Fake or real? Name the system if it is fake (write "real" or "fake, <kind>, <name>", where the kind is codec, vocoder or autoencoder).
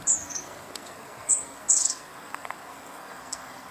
fake, codec, SNAC